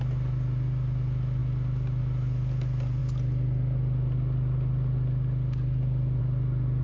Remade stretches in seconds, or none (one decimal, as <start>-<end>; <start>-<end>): none